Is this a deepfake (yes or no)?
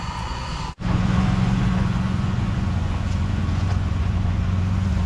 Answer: yes